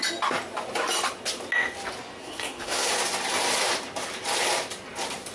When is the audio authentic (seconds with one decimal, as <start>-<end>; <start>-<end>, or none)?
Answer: 0.0-2.2; 2.9-5.3